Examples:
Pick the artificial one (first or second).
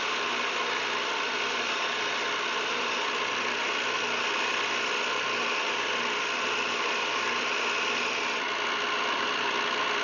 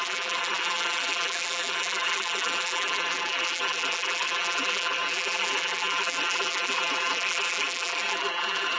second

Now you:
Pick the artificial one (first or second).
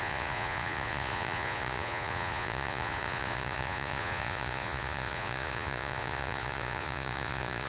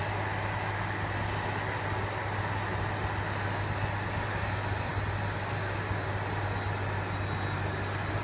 first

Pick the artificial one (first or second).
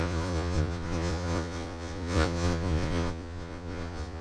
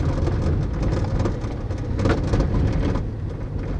first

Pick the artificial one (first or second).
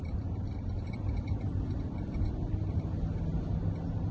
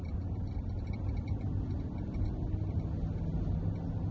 first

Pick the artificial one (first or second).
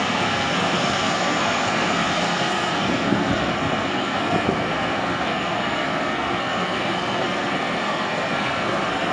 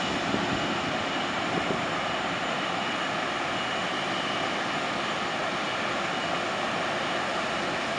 first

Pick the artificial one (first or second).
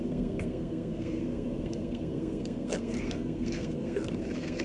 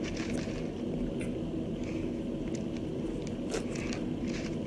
first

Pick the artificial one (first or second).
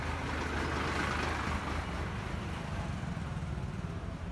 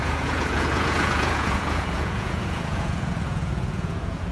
second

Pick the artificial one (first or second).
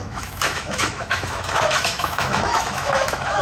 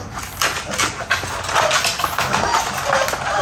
first